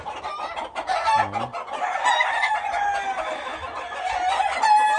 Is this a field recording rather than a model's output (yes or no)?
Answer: yes